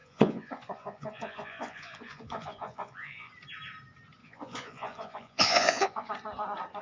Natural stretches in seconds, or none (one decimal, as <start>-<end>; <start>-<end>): 3.3-4.2; 6.1-6.8